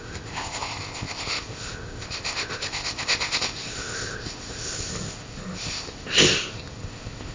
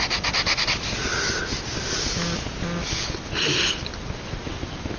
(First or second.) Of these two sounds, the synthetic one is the first